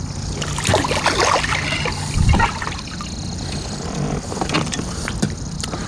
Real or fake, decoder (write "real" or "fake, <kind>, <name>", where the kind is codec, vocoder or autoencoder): real